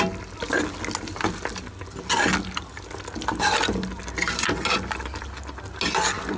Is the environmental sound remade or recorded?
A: recorded